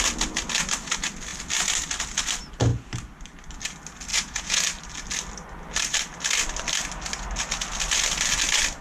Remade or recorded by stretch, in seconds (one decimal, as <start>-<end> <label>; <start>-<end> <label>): 0.0-4.1 recorded; 4.1-4.6 remade; 4.6-8.8 recorded